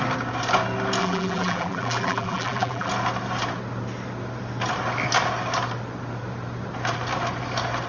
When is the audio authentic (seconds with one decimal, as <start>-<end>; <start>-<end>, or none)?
0.0-1.0; 2.9-7.9